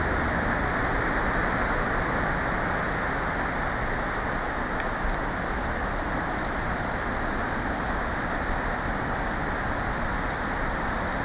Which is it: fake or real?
real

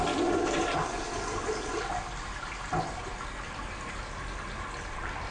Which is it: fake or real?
real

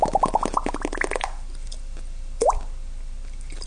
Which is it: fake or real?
real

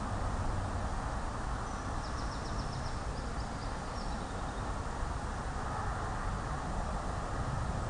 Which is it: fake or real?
real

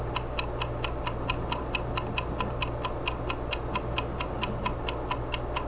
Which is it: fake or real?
real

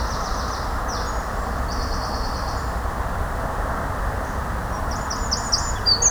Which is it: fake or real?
real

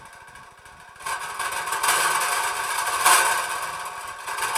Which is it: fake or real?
real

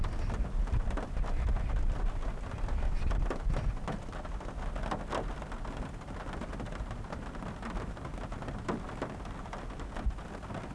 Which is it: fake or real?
real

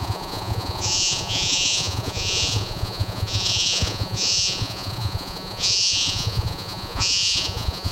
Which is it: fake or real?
fake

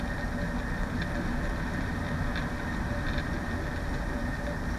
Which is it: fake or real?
real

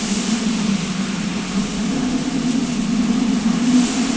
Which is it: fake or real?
real